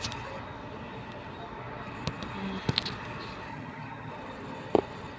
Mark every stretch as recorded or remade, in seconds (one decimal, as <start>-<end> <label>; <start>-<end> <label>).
0.0-3.5 recorded; 3.5-4.1 remade; 4.1-5.2 recorded